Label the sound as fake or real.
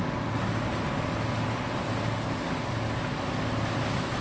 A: real